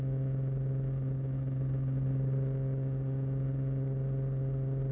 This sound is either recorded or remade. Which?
recorded